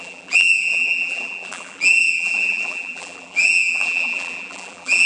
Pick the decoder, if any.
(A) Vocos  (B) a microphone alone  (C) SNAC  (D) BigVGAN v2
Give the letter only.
D